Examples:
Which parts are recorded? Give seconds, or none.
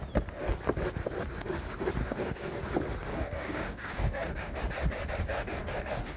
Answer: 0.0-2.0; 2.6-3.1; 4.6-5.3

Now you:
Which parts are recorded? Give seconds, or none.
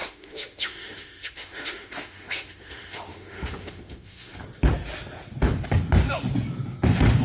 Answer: 4.3-7.2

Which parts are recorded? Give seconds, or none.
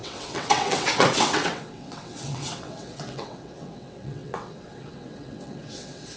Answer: none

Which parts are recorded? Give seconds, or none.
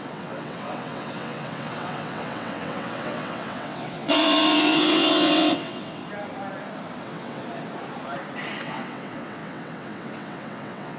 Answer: 6.0-7.0; 7.4-8.6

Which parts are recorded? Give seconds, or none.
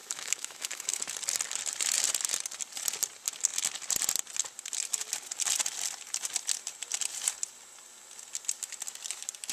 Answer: 1.0-9.5